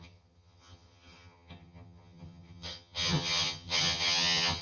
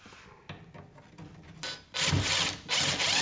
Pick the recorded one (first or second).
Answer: second